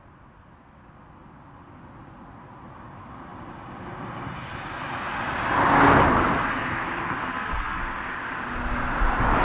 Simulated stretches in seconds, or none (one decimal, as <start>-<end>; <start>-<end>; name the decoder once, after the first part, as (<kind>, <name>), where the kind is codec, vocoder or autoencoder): 6.3-6.8 (codec, SNAC); 7.3-7.8